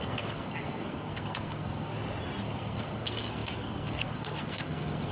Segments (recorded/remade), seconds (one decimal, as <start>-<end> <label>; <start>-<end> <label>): 0.0-1.9 remade; 1.9-2.4 recorded; 2.4-5.1 remade